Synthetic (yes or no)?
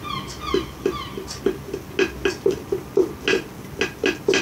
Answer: no